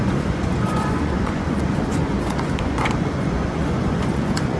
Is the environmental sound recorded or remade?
remade